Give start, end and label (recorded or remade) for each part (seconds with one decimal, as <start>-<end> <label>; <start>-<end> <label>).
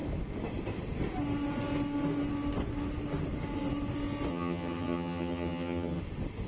0.0-4.3 recorded; 4.3-6.0 remade; 6.0-6.5 recorded